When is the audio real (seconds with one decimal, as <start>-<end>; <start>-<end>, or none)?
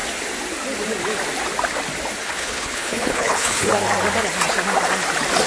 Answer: 0.0-2.2; 3.7-5.5